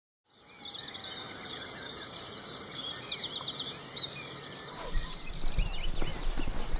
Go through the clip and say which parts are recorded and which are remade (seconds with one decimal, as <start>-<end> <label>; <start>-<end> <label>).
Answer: 0.0-1.2 recorded; 1.2-5.3 remade; 5.3-6.1 recorded; 6.1-6.8 remade